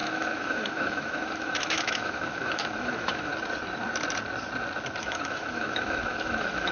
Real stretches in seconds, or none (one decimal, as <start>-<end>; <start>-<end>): 3.3-5.0